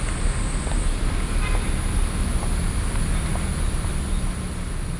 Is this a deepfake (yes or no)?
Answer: no